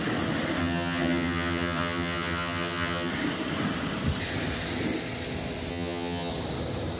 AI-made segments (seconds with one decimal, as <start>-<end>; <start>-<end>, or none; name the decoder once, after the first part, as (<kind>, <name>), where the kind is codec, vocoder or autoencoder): 0.6-3.1 (vocoder, HiFi-GAN); 5.7-6.3

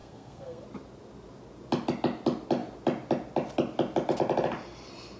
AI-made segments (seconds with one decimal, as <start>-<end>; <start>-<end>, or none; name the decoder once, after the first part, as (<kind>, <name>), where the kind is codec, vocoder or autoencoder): 0.0-0.6 (codec, SNAC)

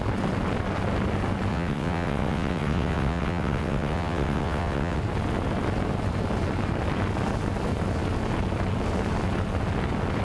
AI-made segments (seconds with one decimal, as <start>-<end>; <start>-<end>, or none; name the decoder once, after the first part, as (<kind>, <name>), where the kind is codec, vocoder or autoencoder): 1.5-5.0 (vocoder, WaveNeXt)

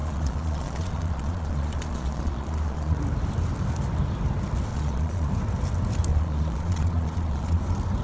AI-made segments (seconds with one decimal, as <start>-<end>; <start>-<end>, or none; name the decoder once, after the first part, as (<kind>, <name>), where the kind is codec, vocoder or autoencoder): 0.0-3.0 (vocoder, Vocos); 4.7-5.3; 6.1-7.6

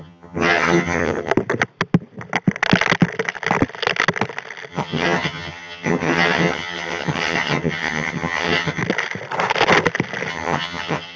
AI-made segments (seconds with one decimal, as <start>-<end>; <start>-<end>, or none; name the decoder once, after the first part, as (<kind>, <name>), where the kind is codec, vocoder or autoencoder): 0.0-1.3 (vocoder, HiFi-GAN); 4.7-8.8; 10.3-11.2

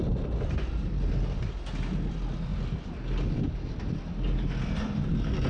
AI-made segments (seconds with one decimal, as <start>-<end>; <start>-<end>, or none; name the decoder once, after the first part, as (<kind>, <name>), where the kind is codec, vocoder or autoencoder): none